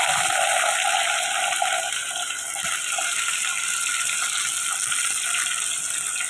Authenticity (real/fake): real